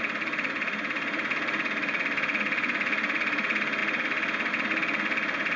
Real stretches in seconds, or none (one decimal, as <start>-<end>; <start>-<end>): 0.0-5.6